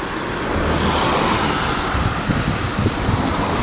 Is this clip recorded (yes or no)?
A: yes